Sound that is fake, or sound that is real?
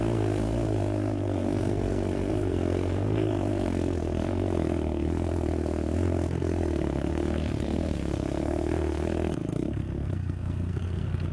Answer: fake